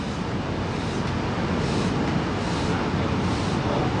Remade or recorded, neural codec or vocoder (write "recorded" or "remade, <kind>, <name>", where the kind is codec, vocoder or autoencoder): recorded